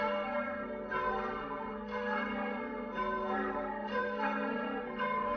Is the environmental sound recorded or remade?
remade